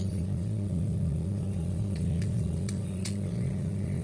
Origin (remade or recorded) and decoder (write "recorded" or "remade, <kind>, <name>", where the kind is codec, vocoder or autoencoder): remade, vocoder, Vocos